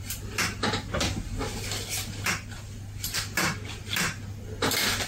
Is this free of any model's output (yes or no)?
yes